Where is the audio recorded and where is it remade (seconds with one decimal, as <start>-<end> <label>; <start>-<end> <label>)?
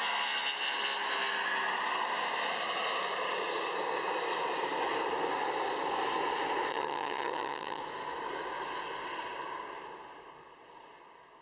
0.0-6.7 recorded; 6.7-7.8 remade; 7.8-11.4 recorded